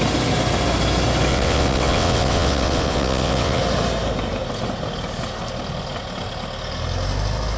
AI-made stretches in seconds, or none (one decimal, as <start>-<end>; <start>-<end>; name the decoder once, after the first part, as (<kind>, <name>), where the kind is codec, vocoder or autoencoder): 1.3-3.6 (vocoder, WaveNeXt)